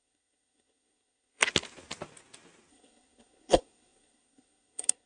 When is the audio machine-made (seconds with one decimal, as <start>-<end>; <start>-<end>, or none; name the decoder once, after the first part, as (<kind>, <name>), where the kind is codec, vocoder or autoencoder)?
0.0-1.4 (codec, SNAC); 2.7-5.1